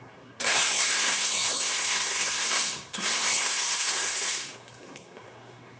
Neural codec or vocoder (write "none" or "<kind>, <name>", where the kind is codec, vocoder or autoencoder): codec, SNAC